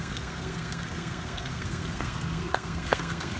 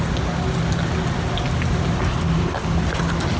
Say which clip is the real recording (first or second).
second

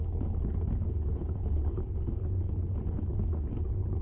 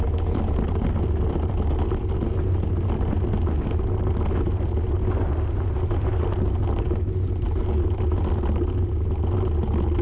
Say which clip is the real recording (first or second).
second